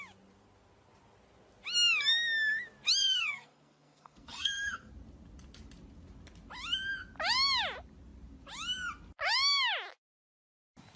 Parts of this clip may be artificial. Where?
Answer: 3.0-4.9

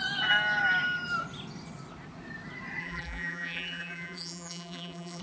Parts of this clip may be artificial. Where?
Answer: 2.8-5.2

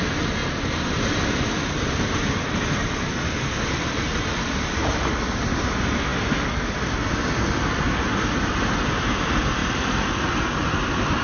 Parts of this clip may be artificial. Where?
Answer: 0.4-5.2; 9.6-10.3

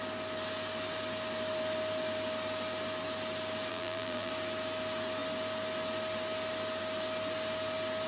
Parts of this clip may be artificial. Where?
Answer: 3.7-4.3

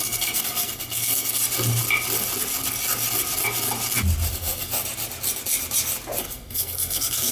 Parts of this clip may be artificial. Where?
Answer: 0.0-1.4; 4.3-4.7; 6.2-7.3

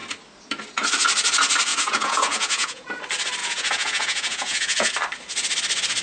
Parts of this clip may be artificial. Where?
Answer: 1.7-2.9; 3.4-4.9

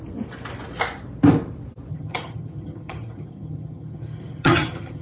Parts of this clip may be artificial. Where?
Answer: 1.9-5.0

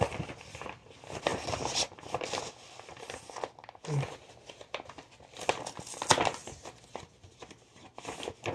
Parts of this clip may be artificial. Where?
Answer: none